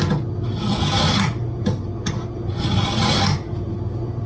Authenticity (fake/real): real